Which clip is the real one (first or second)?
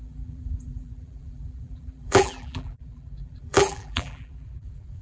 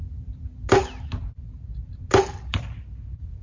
second